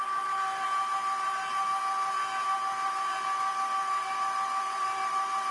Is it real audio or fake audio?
real